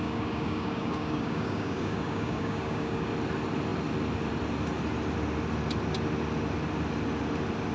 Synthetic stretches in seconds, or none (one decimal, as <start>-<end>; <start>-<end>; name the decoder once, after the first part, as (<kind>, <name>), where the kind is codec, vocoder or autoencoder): 0.0-3.1 (codec, DAC)